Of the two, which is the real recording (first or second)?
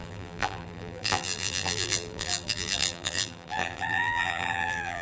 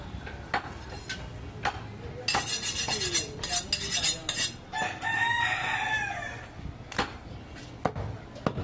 second